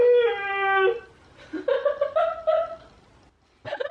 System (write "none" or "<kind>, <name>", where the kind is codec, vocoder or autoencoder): none